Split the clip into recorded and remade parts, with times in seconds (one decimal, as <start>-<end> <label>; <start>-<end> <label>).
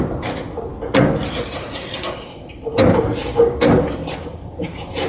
0.0-5.1 recorded